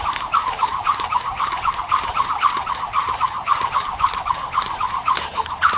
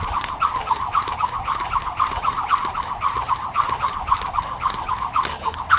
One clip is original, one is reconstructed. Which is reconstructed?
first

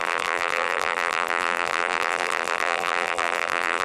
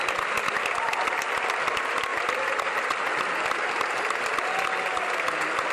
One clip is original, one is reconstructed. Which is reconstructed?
first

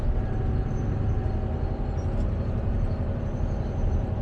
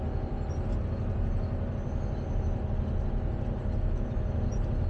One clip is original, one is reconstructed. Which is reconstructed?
first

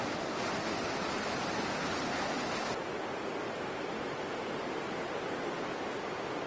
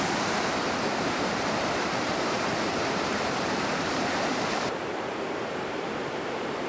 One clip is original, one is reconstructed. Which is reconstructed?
second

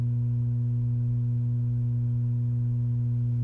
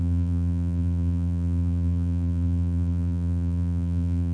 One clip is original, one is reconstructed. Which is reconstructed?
second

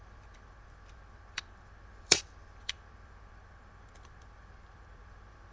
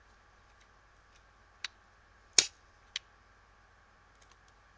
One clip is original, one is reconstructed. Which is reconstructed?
first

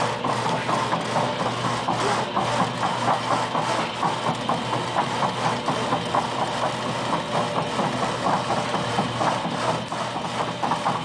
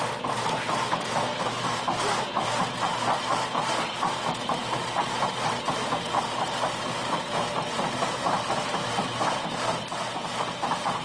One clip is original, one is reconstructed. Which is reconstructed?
second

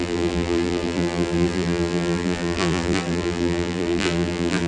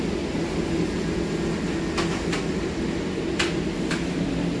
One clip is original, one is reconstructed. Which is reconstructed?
first